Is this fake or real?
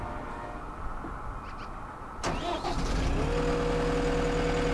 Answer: real